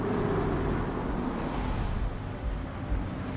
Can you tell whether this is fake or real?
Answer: real